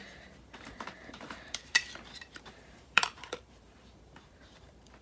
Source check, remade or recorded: remade